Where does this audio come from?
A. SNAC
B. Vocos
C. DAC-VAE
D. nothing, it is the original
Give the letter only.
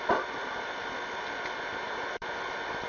D